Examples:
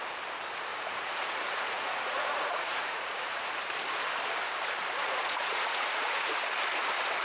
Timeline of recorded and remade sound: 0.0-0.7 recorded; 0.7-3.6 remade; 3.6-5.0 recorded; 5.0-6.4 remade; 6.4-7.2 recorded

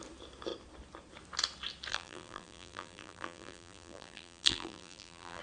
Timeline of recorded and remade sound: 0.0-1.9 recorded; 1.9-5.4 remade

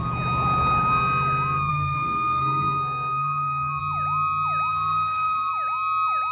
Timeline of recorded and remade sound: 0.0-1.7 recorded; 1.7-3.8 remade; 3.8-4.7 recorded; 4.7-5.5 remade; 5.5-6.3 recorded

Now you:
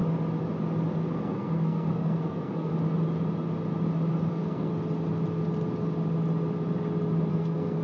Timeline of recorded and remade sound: 0.0-1.1 recorded; 1.1-2.7 remade; 2.7-4.3 recorded; 4.3-4.7 remade; 4.7-7.3 recorded; 7.3-7.8 remade